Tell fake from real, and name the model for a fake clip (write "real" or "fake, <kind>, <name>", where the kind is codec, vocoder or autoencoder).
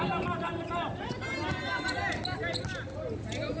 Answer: real